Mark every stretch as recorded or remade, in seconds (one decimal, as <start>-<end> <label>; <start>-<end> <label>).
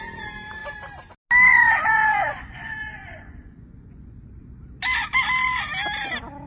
0.0-1.5 recorded; 1.5-4.2 remade; 4.2-6.5 recorded